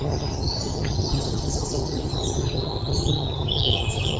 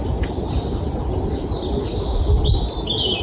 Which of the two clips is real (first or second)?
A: second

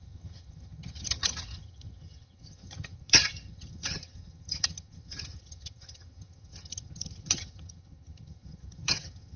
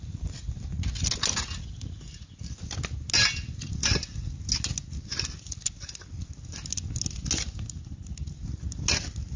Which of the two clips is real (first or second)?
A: second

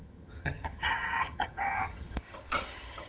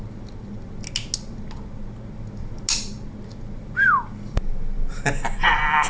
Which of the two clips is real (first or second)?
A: second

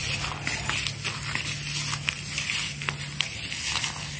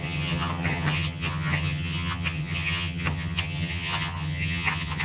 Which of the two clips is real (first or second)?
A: first